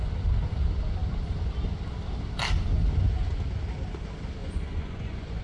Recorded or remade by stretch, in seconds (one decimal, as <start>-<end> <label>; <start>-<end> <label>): 0.0-4.4 recorded; 4.4-5.4 remade